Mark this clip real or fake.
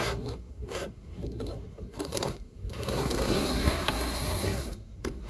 fake